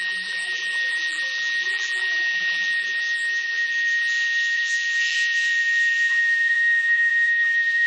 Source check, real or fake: fake